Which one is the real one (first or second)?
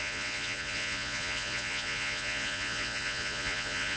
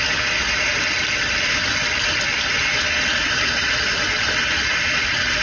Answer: second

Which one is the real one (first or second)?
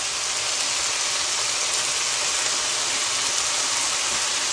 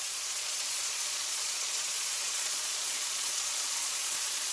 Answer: first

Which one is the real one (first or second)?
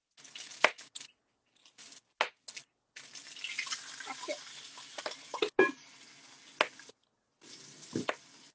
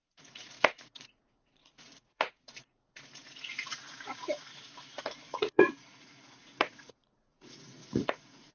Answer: first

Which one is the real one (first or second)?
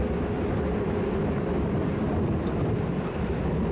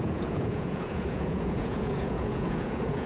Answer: first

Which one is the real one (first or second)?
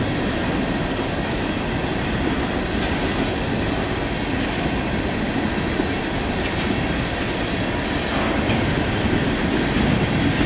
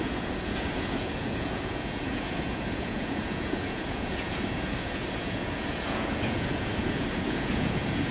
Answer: first